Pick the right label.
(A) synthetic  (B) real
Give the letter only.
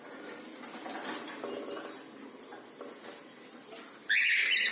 B